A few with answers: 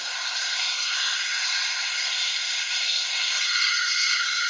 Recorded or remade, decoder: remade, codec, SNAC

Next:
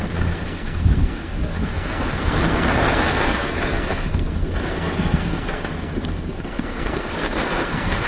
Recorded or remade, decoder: remade, codec, SNAC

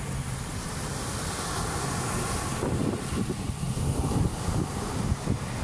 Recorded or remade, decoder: recorded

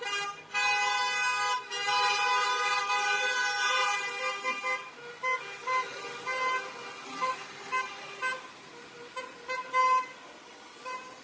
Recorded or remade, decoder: recorded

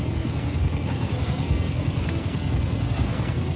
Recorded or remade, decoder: remade, codec, SNAC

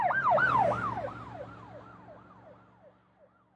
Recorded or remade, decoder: recorded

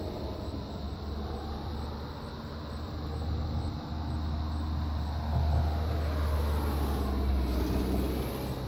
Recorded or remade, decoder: recorded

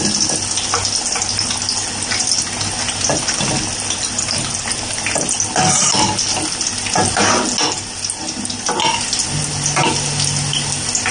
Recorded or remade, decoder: recorded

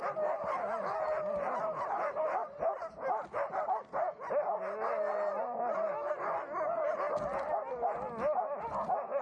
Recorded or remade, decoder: recorded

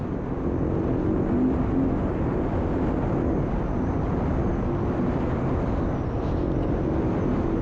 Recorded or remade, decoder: recorded